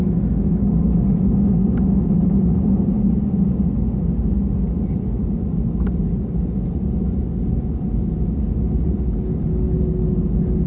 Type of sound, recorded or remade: recorded